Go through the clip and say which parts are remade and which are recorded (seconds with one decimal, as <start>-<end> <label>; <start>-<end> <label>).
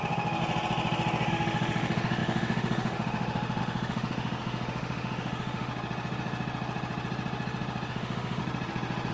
0.0-0.4 remade; 0.4-1.3 recorded; 1.3-5.7 remade; 5.7-7.9 recorded; 7.9-8.4 remade; 8.4-9.1 recorded